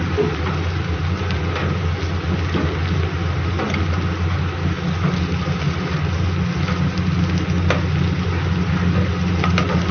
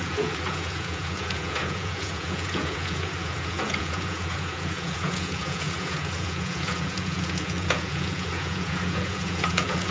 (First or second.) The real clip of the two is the first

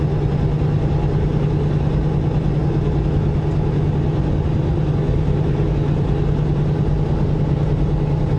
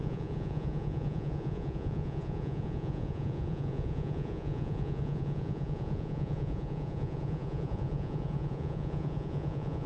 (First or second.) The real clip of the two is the first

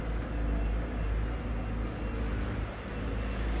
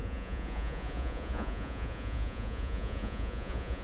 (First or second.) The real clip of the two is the first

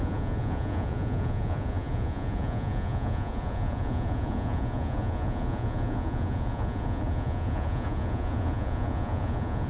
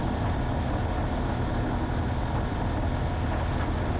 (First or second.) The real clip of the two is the second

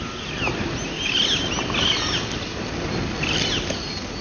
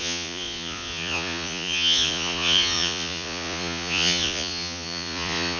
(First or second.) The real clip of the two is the first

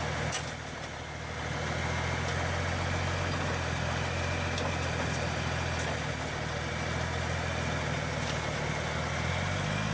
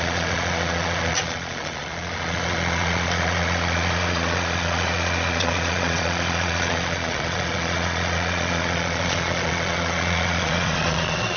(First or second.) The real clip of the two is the first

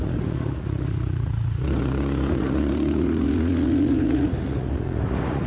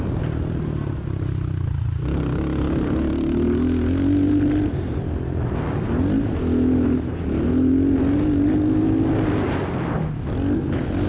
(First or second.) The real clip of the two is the second